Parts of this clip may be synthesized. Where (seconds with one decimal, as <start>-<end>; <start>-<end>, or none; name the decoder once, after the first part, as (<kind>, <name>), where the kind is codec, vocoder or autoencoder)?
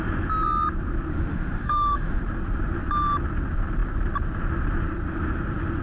1.1-2.2 (autoencoder, DAC-VAE)